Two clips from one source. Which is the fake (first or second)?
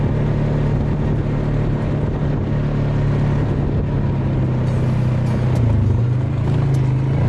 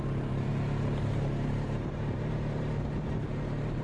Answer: second